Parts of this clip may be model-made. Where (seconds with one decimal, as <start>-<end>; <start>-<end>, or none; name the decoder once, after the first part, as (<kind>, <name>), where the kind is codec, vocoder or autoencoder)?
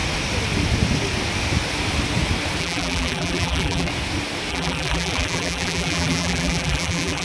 2.6-3.9 (vocoder, BigVGAN v2); 4.5-7.2